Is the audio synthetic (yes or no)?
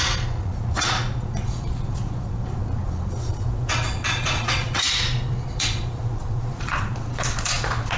yes